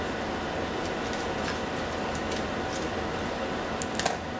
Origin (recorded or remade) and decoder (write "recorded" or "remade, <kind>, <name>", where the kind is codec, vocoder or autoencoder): recorded